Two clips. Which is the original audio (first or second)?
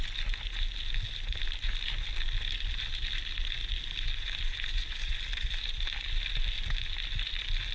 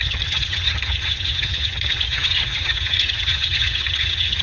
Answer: first